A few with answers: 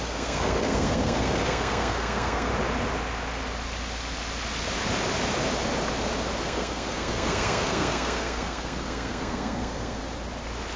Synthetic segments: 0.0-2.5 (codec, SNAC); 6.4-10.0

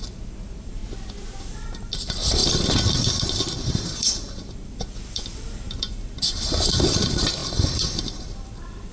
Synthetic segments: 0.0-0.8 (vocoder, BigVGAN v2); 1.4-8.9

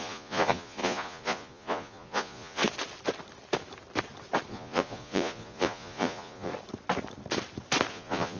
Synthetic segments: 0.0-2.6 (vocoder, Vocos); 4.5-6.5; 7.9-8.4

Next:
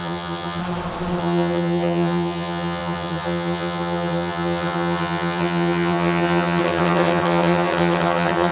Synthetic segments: 0.0-0.6 (vocoder, HiFi-GAN); 1.2-8.5